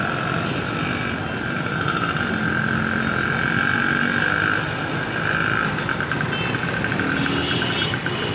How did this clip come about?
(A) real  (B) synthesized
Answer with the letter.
A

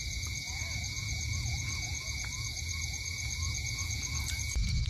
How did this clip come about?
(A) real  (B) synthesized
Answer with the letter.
B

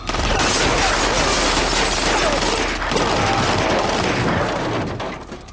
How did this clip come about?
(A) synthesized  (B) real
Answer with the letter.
B